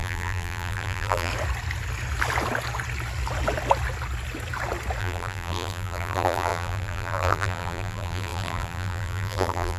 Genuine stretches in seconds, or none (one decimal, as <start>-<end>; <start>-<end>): 1.3-5.0